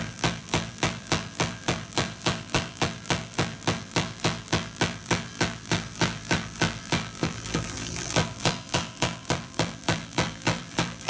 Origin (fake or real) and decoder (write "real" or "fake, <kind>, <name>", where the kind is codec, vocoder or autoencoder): fake, vocoder, BigVGAN v2